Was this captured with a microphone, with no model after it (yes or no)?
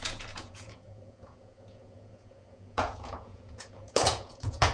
no